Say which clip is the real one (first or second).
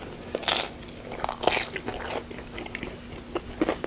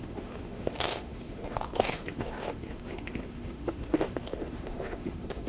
first